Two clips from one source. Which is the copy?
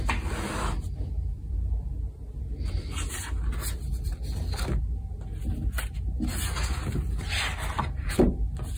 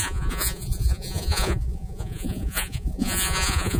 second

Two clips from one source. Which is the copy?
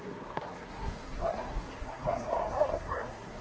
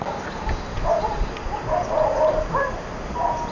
first